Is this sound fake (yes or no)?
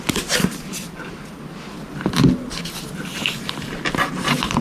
no